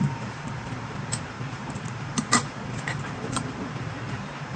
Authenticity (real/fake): fake